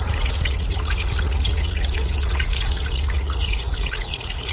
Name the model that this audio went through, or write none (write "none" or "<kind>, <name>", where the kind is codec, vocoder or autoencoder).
vocoder, Vocos